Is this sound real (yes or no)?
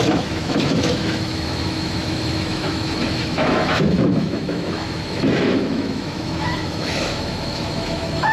no